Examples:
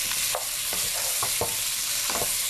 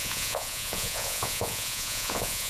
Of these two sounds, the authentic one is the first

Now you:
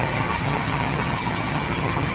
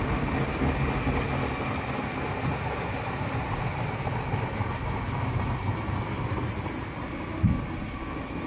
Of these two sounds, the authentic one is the second